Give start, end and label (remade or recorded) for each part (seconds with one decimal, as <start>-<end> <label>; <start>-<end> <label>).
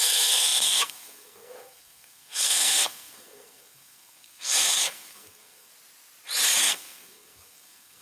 0.0-5.7 remade; 5.7-6.6 recorded; 6.6-8.0 remade